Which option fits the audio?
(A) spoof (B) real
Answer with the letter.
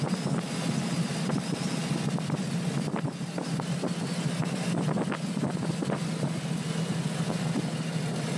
B